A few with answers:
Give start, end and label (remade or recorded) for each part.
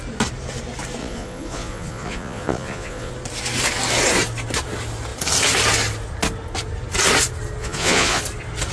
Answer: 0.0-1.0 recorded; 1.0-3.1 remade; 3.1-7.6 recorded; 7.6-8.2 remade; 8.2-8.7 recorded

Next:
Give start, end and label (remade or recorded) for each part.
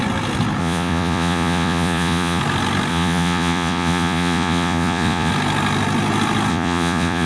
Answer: 0.0-0.6 recorded; 0.6-2.4 remade; 2.4-2.9 recorded; 2.9-5.3 remade; 5.3-6.5 recorded; 6.5-7.3 remade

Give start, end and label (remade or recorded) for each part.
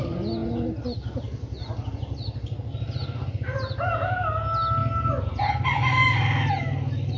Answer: 0.0-7.2 recorded